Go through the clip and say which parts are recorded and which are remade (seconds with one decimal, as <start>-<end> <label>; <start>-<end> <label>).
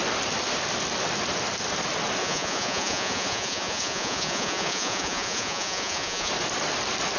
0.0-2.2 recorded; 2.2-6.3 remade; 6.3-7.2 recorded